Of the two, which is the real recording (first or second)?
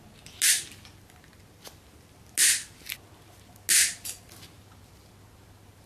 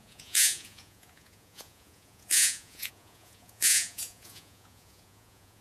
first